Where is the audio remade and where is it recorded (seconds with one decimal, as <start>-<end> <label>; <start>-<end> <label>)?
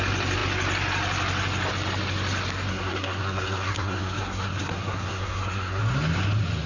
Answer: 0.0-2.7 recorded; 2.7-5.8 remade; 5.8-6.7 recorded